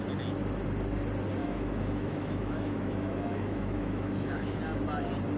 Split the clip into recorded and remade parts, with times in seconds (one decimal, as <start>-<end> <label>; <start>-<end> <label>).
0.0-1.4 recorded; 1.4-4.6 remade; 4.6-5.4 recorded